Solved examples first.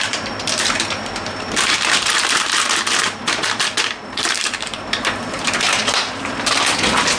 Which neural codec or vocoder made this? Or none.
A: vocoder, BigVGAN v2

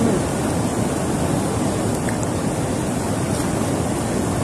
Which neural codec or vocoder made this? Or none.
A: none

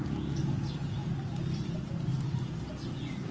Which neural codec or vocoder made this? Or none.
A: none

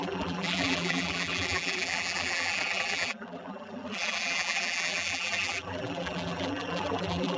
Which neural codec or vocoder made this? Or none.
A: vocoder, BigVGAN v2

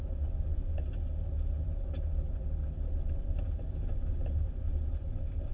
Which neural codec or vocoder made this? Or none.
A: none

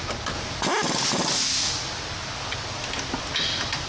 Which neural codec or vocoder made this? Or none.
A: none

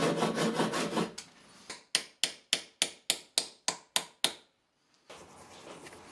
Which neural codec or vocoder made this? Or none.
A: none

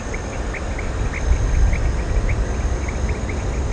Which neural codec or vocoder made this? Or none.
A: none